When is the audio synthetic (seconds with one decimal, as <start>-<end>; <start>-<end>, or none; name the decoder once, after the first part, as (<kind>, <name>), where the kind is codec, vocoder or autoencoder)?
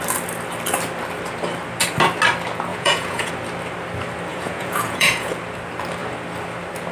2.7-3.3 (vocoder, Vocos); 4.3-5.3